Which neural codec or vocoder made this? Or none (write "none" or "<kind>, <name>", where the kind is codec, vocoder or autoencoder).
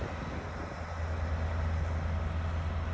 none